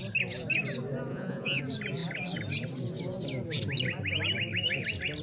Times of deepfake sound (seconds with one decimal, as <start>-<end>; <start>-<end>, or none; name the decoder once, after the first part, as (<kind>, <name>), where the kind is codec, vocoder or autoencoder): 1.1-1.6 (vocoder, Vocos)